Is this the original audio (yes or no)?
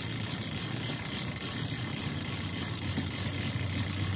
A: yes